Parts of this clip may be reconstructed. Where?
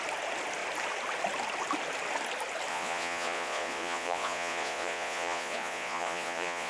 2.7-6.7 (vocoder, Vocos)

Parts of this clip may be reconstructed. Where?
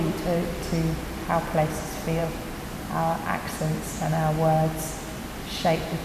none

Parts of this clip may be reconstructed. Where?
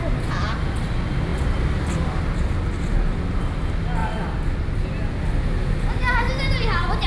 none